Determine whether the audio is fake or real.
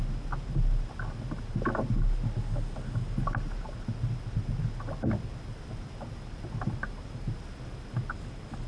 real